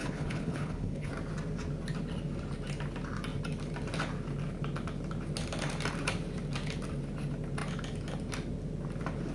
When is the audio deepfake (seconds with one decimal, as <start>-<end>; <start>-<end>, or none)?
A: 0.0-1.1